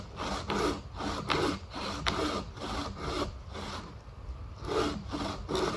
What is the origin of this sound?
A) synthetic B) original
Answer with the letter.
B